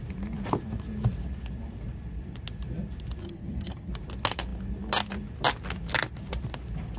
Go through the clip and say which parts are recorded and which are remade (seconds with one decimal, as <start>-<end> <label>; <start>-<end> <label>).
0.0-3.2 recorded; 3.2-3.9 remade; 3.9-7.0 recorded

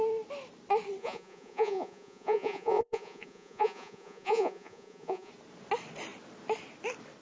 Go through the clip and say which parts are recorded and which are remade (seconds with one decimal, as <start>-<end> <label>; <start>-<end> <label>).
0.0-1.0 recorded; 1.0-5.3 remade; 5.3-7.2 recorded

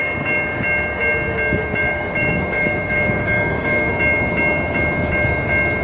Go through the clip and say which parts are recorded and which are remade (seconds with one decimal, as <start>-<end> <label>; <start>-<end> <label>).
0.0-1.8 recorded; 1.8-3.9 remade; 3.9-5.8 recorded

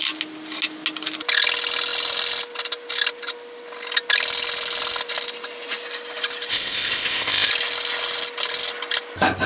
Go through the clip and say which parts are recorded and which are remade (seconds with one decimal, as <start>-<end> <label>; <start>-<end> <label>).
0.0-6.5 recorded; 6.5-7.5 remade; 7.5-9.5 recorded

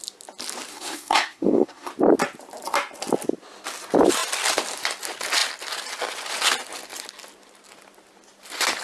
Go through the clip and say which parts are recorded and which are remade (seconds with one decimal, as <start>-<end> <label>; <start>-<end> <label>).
0.0-0.7 recorded; 0.7-1.9 remade; 1.9-8.8 recorded

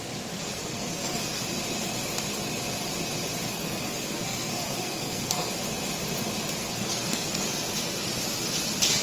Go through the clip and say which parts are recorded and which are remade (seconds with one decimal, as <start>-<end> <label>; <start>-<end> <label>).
0.0-0.5 recorded; 0.5-1.4 remade; 1.4-3.5 recorded; 3.5-5.5 remade; 5.5-6.6 recorded; 6.6-7.4 remade; 7.4-9.0 recorded

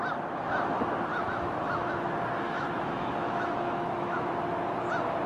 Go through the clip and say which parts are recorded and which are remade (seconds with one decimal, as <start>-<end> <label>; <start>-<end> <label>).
0.0-1.1 recorded; 1.1-4.3 remade; 4.3-5.3 recorded

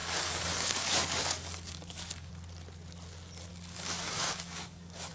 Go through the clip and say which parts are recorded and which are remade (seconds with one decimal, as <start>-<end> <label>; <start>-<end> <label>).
0.0-2.3 remade; 2.3-3.5 recorded; 3.5-5.1 remade